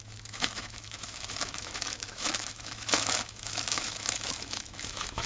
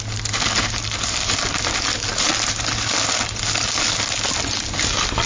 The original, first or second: second